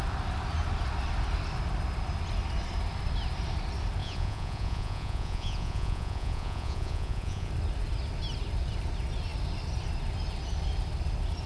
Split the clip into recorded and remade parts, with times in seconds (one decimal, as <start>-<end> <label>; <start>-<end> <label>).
0.0-4.0 recorded; 4.0-7.5 remade; 7.5-11.5 recorded